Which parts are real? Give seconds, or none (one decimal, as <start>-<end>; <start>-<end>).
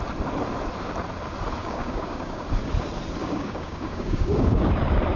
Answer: 0.0-1.6; 2.4-3.2; 4.7-5.2